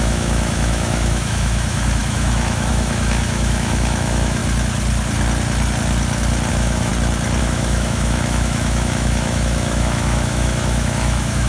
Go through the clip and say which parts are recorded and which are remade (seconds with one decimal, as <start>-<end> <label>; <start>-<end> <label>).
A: 0.0-4.4 remade; 4.4-6.5 recorded; 6.5-6.9 remade; 6.9-7.4 recorded; 7.4-11.5 remade